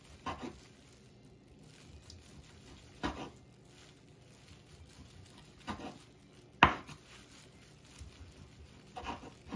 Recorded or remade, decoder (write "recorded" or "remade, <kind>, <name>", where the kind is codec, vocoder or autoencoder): recorded